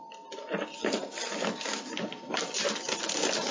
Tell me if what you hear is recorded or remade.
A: recorded